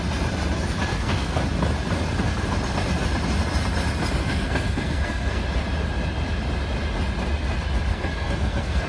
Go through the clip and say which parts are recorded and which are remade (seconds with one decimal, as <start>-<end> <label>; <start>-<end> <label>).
0.0-0.9 recorded; 0.9-1.4 remade; 1.4-4.2 recorded; 4.2-5.4 remade; 5.4-7.9 recorded; 7.9-8.9 remade